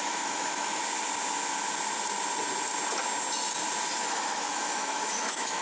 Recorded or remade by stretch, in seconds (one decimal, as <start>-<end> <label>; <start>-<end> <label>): 0.0-0.8 remade; 0.8-4.0 recorded; 4.0-5.6 remade